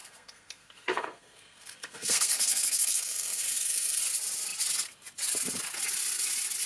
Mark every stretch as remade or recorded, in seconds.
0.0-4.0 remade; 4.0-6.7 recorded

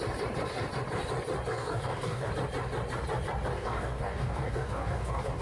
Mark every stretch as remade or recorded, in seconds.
0.0-1.5 recorded; 1.5-2.3 remade; 2.3-3.5 recorded; 3.5-5.4 remade

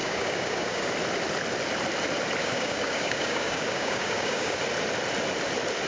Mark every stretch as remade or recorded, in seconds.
0.0-0.9 remade; 0.9-2.4 recorded; 2.4-4.6 remade; 4.6-5.9 recorded

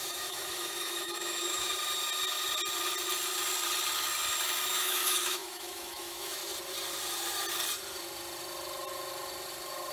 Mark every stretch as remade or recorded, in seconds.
0.0-1.7 remade; 1.7-4.7 recorded; 4.7-6.4 remade; 6.4-9.9 recorded

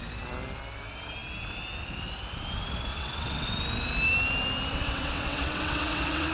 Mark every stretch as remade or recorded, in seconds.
0.0-2.9 recorded; 2.9-3.5 remade; 3.5-4.7 recorded; 4.7-6.3 remade